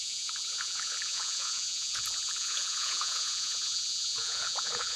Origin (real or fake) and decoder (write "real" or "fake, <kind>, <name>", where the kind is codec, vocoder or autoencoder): fake, vocoder, Vocos